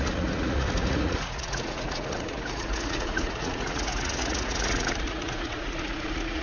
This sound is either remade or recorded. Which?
remade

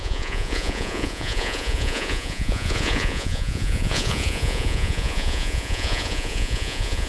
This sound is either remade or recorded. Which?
remade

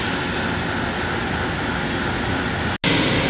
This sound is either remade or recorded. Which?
recorded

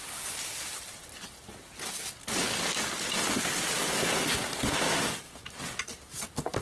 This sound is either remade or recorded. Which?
recorded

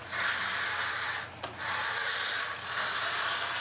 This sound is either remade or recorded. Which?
recorded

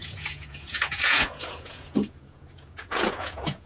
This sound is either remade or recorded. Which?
remade